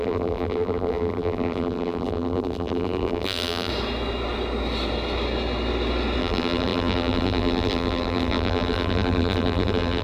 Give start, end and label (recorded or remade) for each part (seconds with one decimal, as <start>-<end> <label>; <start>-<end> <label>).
0.0-3.7 remade; 3.7-6.2 recorded; 6.2-10.0 remade